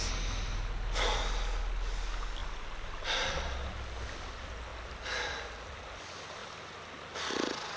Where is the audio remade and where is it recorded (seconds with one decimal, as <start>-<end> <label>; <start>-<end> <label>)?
0.0-7.8 recorded